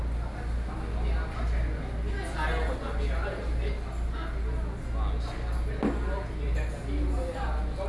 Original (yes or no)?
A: yes